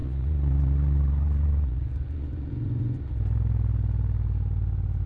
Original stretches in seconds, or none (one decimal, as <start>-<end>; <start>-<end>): 3.1-5.1